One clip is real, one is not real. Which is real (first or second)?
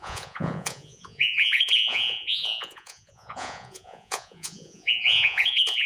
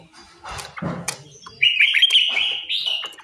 second